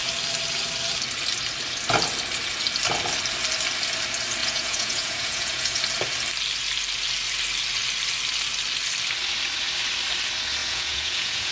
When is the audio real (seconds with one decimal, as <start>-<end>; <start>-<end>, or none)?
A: 0.0-4.4; 5.8-10.6